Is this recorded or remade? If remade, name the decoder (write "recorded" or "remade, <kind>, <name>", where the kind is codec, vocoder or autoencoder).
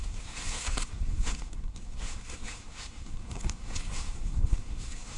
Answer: remade, codec, SNAC